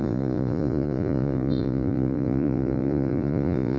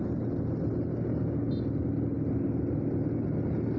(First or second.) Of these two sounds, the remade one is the first